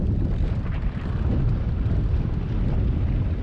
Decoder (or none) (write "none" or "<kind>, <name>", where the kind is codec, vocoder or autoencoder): none